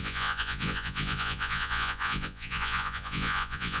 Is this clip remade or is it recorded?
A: remade